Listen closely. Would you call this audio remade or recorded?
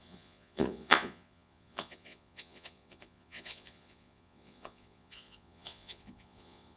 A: remade